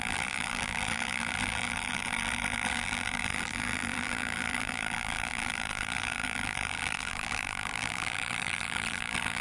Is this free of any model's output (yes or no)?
no